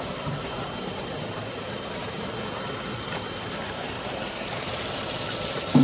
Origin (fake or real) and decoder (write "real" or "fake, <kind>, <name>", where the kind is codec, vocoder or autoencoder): fake, vocoder, BigVGAN v2